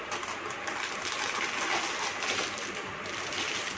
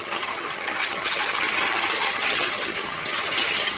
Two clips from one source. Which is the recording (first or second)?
first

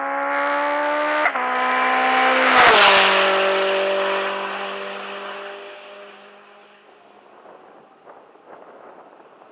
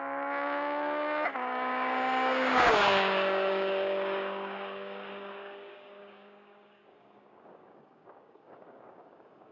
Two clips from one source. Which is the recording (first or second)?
first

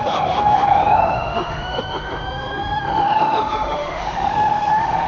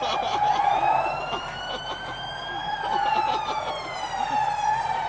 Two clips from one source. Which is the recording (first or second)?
second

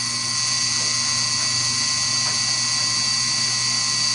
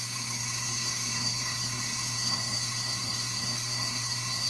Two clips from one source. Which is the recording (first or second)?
first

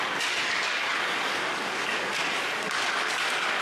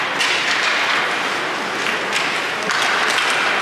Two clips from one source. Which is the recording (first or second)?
second